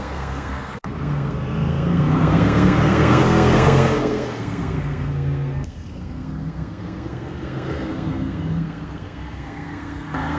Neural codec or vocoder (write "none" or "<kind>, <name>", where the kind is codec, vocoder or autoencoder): codec, SNAC